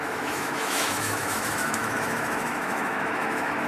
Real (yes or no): no